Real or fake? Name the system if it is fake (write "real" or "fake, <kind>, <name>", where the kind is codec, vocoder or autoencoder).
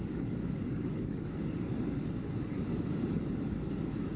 fake, codec, DAC